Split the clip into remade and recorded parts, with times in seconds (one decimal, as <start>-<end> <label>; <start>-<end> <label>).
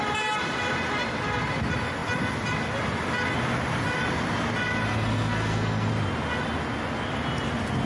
0.0-4.9 recorded; 4.9-5.9 remade; 5.9-7.9 recorded